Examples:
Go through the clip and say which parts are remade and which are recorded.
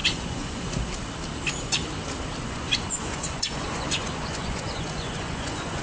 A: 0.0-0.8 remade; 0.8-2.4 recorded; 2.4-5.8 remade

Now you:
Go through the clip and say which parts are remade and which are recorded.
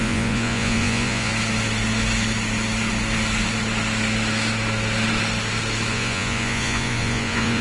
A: 0.0-1.3 remade; 1.3-5.9 recorded; 5.9-7.6 remade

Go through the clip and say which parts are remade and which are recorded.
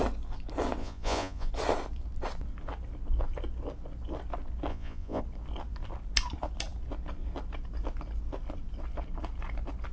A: 0.0-0.8 recorded; 0.8-1.5 remade; 1.5-4.7 recorded; 4.7-5.2 remade; 5.2-9.9 recorded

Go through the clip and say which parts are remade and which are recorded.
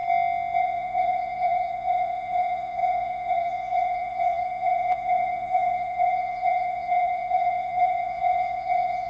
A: 0.0-0.6 recorded; 0.6-9.1 remade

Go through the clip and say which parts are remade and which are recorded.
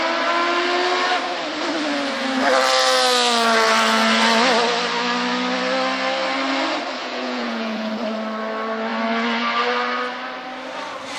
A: 0.0-7.0 recorded; 7.0-7.9 remade; 7.9-11.2 recorded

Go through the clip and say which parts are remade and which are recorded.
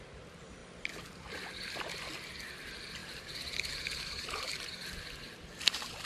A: 0.0-6.1 recorded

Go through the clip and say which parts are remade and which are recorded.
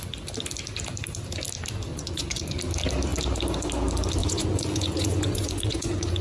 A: 0.0-1.9 recorded; 1.9-2.6 remade; 2.6-4.2 recorded; 4.2-6.2 remade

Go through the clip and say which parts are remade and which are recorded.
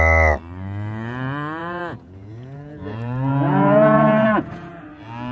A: 0.0-1.6 recorded; 1.6-4.8 remade; 4.8-5.3 recorded